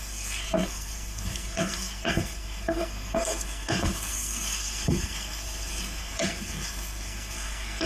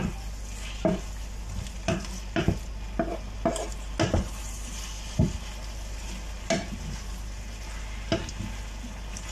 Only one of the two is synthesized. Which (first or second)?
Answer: first